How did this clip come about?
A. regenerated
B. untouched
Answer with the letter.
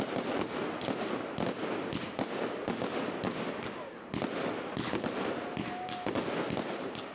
B